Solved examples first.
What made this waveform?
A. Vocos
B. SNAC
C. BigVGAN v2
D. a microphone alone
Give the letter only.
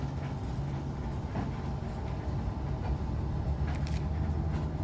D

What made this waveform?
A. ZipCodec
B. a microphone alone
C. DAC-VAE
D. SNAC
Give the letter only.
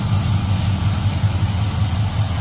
B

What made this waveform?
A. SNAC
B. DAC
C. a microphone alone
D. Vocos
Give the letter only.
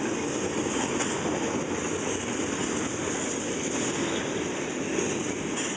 C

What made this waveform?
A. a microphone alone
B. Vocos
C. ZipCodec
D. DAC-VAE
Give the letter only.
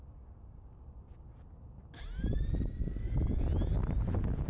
A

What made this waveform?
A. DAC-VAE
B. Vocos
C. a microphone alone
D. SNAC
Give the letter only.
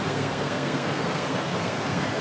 D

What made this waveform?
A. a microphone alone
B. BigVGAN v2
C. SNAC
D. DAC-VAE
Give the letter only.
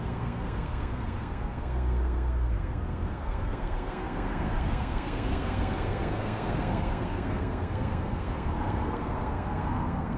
C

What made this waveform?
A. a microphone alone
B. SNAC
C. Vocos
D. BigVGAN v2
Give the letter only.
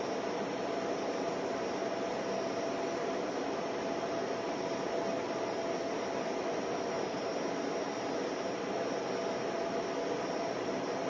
A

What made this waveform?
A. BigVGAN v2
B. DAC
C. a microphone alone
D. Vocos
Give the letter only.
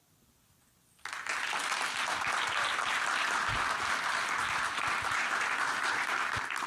C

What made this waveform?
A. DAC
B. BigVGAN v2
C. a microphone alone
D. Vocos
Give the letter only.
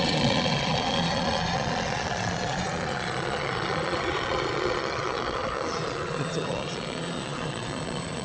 D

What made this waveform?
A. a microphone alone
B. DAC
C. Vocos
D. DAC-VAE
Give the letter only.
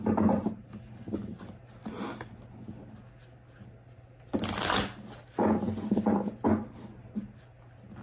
A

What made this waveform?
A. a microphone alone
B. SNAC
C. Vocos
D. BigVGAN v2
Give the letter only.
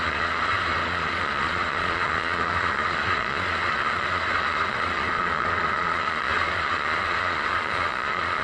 C